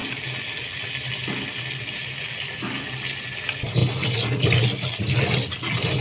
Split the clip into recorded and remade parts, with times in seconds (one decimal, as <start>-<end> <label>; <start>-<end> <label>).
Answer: 0.0-6.0 recorded